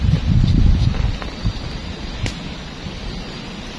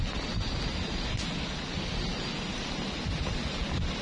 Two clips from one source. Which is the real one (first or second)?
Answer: second